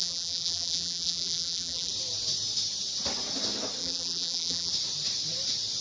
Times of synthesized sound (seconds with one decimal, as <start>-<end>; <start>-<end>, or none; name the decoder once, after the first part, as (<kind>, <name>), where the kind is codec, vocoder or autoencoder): 0.0-1.9 (vocoder, BigVGAN v2); 3.8-4.7